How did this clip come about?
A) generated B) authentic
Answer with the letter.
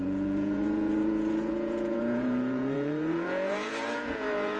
A